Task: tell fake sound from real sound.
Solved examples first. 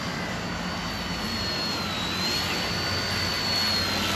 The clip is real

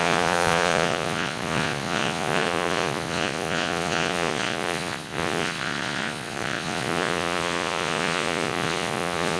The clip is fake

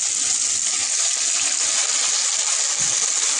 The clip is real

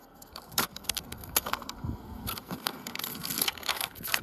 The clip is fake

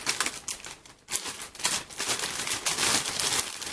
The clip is real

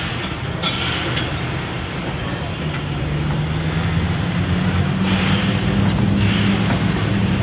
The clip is real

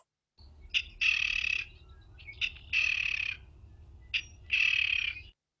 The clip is real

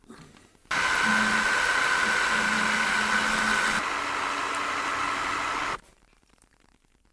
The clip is real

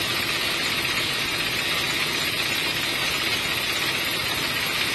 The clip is real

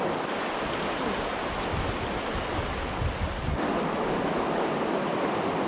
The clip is real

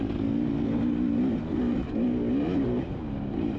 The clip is real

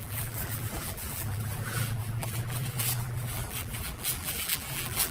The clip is fake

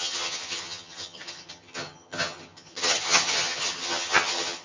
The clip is fake